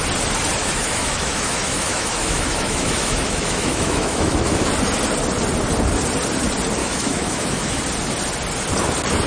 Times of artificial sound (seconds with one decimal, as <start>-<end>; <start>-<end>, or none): 0.6-4.7; 6.8-7.8

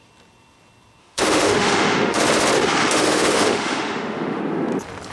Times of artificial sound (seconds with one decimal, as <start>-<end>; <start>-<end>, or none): 1.0-2.2; 2.8-4.4

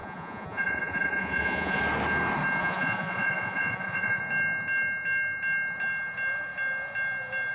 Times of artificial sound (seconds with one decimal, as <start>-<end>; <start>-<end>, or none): 0.0-1.8; 2.6-4.2

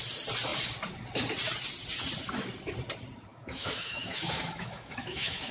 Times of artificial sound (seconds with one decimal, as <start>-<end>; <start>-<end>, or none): 3.3-5.5

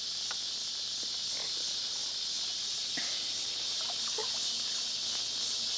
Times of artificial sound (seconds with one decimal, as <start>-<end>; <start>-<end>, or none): none

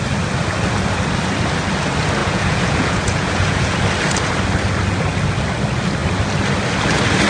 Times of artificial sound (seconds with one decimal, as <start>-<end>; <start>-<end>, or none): 2.2-3.8